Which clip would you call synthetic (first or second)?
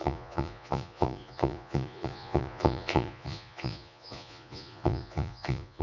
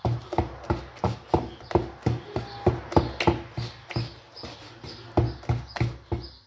first